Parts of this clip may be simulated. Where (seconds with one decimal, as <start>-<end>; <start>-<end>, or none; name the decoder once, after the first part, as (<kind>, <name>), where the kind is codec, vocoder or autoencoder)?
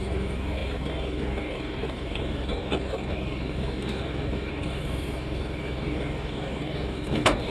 0.0-7.5 (codec, DAC)